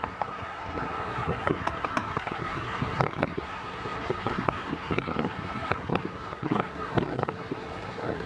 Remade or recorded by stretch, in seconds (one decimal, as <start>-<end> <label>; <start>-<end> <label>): 0.0-8.3 remade